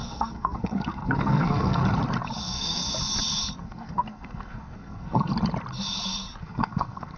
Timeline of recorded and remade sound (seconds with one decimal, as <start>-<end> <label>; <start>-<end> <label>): 0.0-1.8 remade; 1.8-2.4 recorded; 2.4-2.8 remade; 2.8-3.6 recorded; 3.6-5.3 remade; 5.3-6.4 recorded; 6.4-7.2 remade